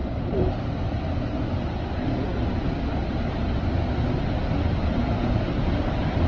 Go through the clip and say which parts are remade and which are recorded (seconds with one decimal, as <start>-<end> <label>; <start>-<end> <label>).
0.0-1.0 remade; 1.0-6.3 recorded

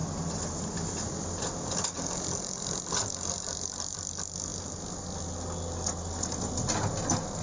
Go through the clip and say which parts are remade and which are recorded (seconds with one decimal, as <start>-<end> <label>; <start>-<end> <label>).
0.0-7.4 recorded

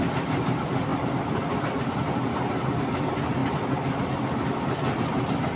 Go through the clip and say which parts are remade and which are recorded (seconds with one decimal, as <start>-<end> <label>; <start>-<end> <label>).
0.0-0.9 recorded; 0.9-1.8 remade; 1.8-5.6 recorded

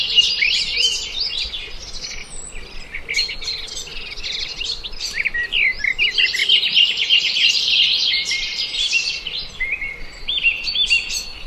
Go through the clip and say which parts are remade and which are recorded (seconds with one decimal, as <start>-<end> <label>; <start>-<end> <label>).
0.0-6.4 recorded; 6.4-7.6 remade; 7.6-8.5 recorded; 8.5-9.4 remade; 9.4-11.5 recorded

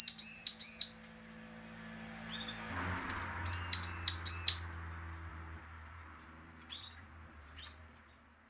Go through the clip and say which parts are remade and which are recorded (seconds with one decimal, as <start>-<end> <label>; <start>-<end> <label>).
0.0-0.5 remade; 0.5-5.3 recorded; 5.3-8.5 remade

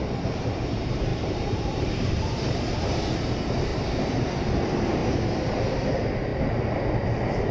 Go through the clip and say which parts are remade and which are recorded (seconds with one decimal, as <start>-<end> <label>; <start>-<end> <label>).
0.0-3.7 remade; 3.7-4.3 recorded; 4.3-5.0 remade; 5.0-5.7 recorded; 5.7-6.3 remade; 6.3-7.5 recorded